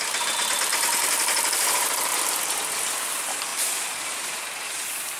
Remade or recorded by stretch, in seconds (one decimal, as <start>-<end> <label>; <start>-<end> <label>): 0.0-2.1 remade; 2.1-2.8 recorded; 2.8-5.2 remade